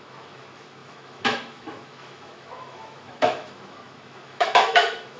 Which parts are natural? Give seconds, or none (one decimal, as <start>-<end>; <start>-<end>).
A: none